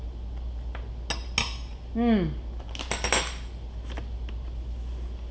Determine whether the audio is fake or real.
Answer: real